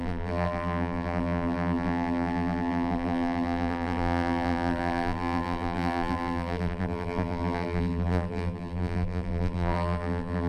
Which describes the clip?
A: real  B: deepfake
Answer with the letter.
B